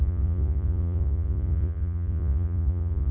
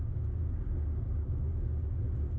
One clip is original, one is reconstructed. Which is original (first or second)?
second